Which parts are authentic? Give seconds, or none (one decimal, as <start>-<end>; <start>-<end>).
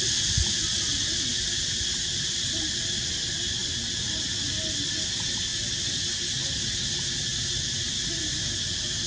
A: 0.0-1.3; 3.1-5.5; 6.0-7.3; 8.0-9.1